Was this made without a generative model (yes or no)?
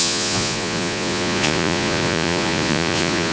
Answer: no